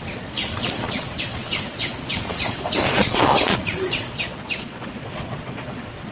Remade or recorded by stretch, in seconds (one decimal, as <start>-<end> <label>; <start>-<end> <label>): 0.0-6.1 remade

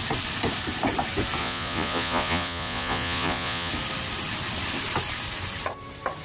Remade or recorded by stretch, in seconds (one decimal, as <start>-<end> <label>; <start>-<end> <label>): 0.0-1.4 recorded; 1.4-3.7 remade; 3.7-6.2 recorded

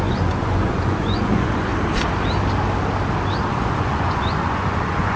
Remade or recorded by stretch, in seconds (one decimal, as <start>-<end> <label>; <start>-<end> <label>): 0.0-1.7 remade; 1.7-3.5 recorded; 3.5-5.2 remade

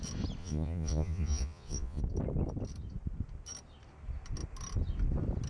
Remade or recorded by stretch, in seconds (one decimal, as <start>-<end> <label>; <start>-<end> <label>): 0.0-0.4 recorded; 0.4-2.0 remade; 2.0-5.5 recorded

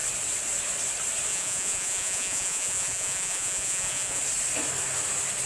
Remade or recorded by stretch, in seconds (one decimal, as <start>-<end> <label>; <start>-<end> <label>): 0.0-1.3 recorded; 1.3-4.2 remade; 4.2-5.5 recorded

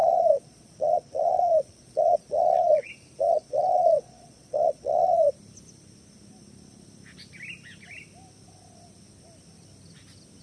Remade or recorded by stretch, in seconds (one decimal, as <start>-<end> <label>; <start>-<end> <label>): 0.0-2.9 remade; 2.9-3.3 recorded; 3.3-5.3 remade; 5.3-10.4 recorded